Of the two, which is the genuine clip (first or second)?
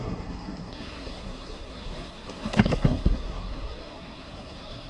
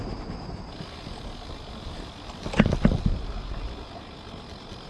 second